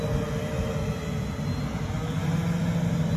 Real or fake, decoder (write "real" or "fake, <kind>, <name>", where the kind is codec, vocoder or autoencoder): real